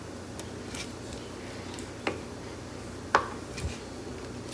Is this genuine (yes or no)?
yes